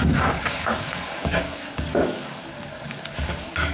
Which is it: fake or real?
fake